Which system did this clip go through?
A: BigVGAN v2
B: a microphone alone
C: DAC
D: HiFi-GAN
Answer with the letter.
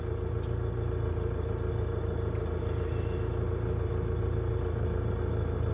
B